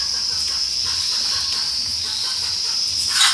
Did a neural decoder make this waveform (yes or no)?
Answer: no